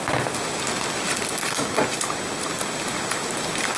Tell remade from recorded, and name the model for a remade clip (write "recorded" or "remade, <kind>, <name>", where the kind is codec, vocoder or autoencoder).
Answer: recorded